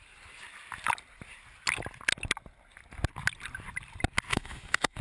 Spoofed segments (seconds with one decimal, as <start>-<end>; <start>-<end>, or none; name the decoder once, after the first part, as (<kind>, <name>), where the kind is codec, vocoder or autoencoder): 4.3-5.0 (autoencoder, DAC-VAE)